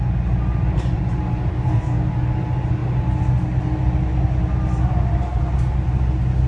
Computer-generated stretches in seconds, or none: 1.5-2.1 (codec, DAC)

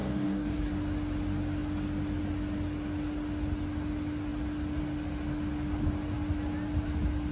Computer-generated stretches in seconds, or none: 0.0-0.6 (codec, DAC)

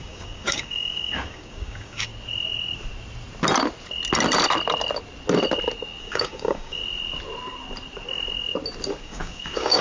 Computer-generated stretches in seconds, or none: 0.0-2.1 (codec, DAC); 6.0-6.8; 9.0-9.8

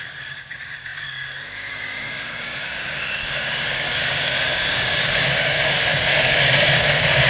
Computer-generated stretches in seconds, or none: 0.0-7.3 (codec, DAC)

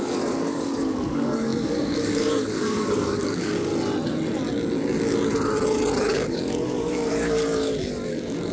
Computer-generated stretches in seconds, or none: 0.0-3.7 (codec, DAC); 6.0-8.5